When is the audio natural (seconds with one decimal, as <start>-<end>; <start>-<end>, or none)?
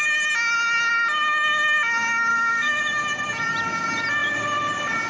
0.0-2.3; 2.8-5.1